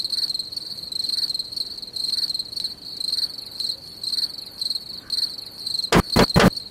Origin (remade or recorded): recorded